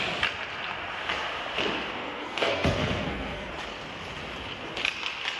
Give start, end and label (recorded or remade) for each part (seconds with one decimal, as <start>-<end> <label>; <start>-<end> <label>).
0.0-2.0 recorded; 2.0-3.5 remade; 3.5-5.4 recorded